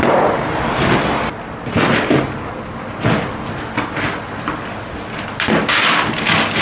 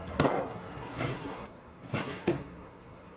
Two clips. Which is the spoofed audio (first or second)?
second